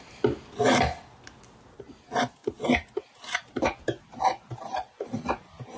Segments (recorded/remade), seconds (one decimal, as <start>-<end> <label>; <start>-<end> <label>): 0.0-5.8 recorded